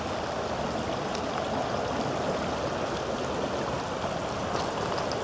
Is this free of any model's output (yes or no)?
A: yes